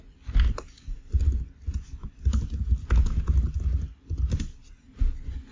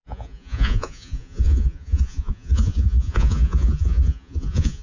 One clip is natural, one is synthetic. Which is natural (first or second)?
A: first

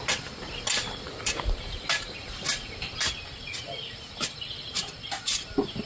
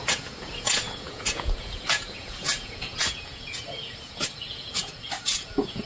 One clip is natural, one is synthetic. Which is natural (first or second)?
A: first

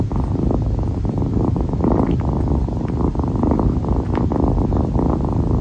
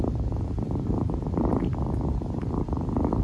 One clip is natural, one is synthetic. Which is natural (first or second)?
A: first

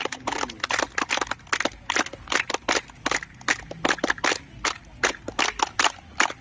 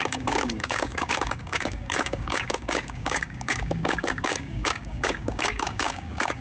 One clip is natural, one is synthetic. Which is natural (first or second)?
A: first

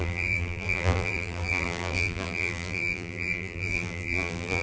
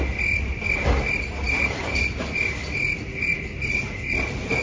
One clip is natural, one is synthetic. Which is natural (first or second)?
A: second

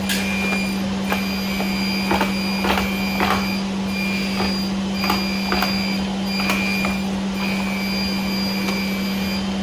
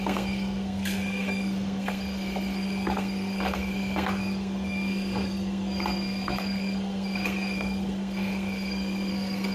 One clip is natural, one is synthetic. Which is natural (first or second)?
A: first